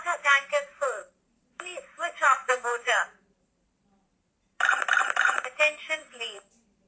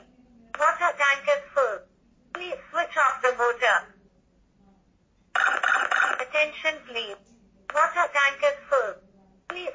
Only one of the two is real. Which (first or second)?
second